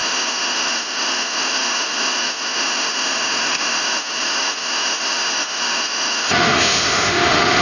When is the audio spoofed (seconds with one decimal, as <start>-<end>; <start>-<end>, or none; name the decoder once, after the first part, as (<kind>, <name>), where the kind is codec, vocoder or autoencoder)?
0.0-7.6 (autoencoder, DAC-VAE)